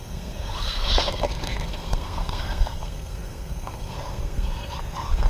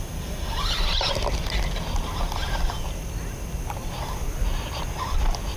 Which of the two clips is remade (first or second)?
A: first